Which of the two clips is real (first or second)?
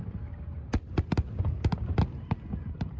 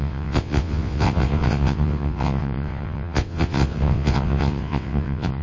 first